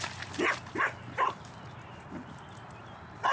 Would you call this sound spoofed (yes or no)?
no